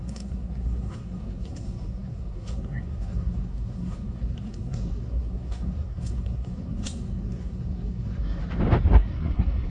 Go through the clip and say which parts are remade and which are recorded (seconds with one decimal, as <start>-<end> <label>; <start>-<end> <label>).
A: 0.0-8.4 remade; 8.4-8.9 recorded; 8.9-9.7 remade